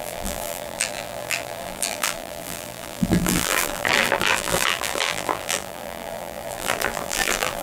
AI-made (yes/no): yes